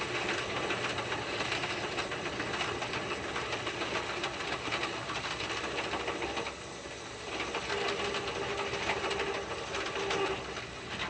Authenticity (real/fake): real